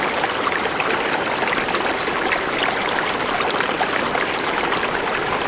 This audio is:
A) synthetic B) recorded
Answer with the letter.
A